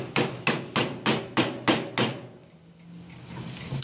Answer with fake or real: real